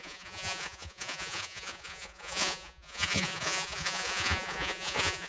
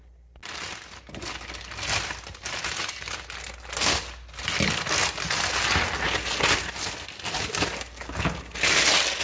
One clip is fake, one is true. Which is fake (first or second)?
first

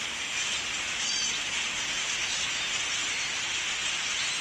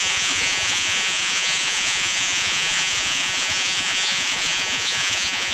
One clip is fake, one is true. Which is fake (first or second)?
second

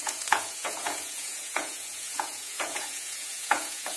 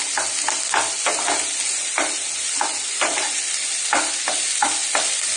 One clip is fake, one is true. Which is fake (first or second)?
first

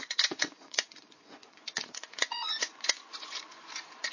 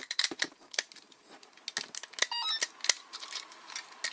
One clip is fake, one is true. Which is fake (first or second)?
first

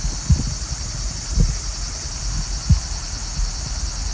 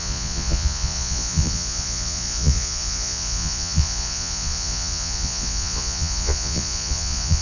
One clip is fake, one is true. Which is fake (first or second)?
second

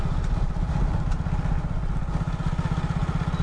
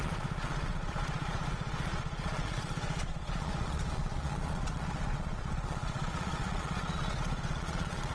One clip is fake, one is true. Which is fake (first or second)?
second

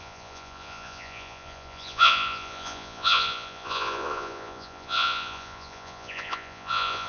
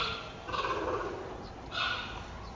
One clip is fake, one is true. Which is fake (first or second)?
first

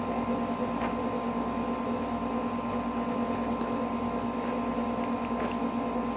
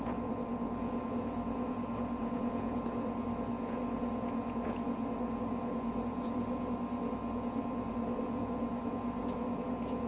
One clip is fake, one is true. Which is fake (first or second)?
second